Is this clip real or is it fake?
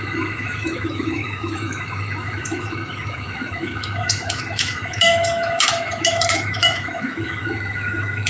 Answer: fake